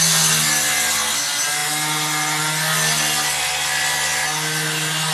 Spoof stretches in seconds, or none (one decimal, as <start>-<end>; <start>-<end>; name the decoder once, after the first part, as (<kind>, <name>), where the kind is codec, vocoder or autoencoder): none